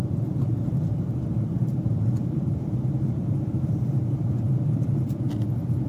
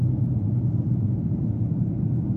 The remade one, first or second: first